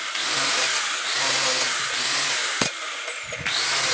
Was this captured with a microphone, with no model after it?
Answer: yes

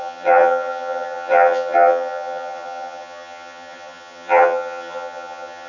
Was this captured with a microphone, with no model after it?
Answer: no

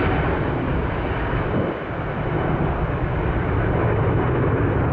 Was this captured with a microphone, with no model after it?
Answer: yes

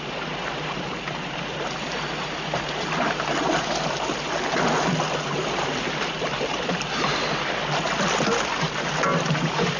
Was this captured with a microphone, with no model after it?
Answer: yes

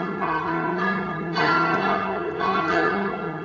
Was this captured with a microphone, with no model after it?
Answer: no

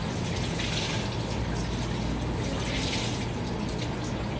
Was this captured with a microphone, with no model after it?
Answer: yes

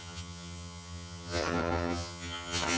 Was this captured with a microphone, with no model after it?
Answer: no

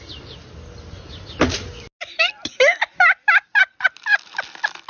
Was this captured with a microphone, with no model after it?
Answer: yes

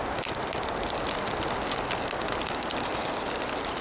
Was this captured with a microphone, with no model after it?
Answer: yes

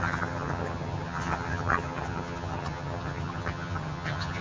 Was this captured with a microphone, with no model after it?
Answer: no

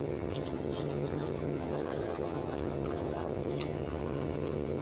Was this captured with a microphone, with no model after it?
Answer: no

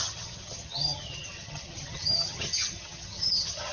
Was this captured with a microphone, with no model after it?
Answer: no